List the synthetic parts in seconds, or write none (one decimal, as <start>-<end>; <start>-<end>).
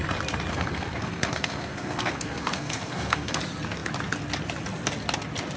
0.5-3.4